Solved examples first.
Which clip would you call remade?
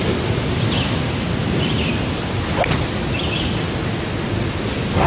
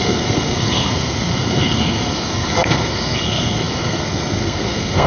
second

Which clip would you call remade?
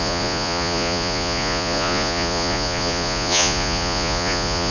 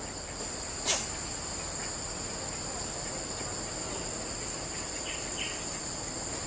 first